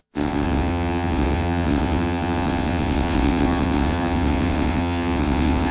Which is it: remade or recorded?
remade